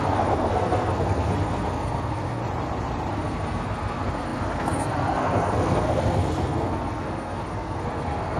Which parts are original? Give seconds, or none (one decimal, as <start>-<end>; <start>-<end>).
2.4-3.1